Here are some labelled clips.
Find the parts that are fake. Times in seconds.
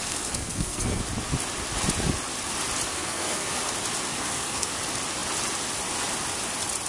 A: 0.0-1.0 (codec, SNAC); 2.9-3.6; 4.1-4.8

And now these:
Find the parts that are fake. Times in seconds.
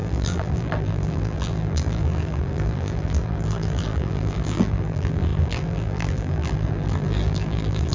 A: 0.0-7.9 (vocoder, BigVGAN v2)